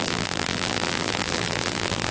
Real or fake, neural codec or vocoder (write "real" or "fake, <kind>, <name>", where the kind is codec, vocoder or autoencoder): fake, vocoder, BigVGAN v2